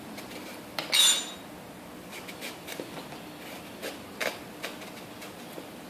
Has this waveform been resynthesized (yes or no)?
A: no